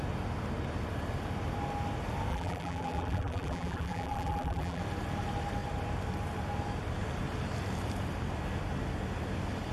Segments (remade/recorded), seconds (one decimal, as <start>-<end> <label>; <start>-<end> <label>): 0.0-2.3 recorded; 2.3-4.8 remade; 4.8-9.7 recorded